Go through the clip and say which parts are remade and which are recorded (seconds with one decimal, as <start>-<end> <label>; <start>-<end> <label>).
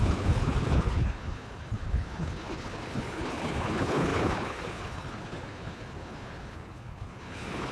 0.0-7.7 remade